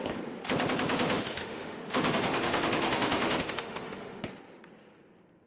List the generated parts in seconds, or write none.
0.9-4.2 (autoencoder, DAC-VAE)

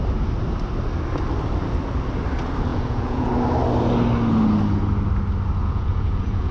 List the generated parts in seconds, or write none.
2.7-3.3 (vocoder, Vocos); 5.6-6.5

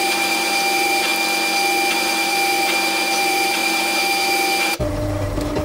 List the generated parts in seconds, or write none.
0.0-1.1 (vocoder, BigVGAN v2); 1.9-5.6

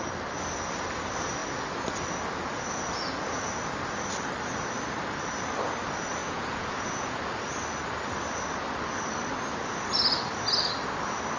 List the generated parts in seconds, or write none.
6.2-7.2 (vocoder, Vocos)

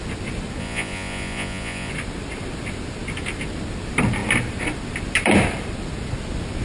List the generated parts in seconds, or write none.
0.6-1.9 (vocoder, Vocos)

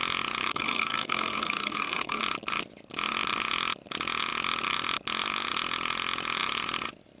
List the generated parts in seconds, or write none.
0.5-2.2 (codec, SNAC)